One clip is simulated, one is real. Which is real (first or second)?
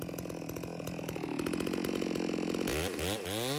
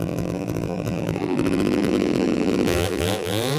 first